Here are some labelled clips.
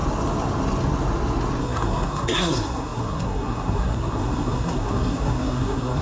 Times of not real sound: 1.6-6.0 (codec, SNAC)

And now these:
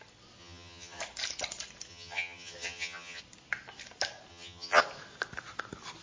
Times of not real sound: 0.4-1.0 (vocoder, HiFi-GAN); 1.9-3.2; 4.3-4.8

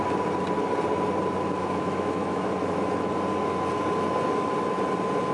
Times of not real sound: 1.6-3.1 (autoencoder, DAC-VAE)